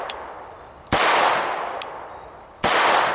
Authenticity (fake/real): real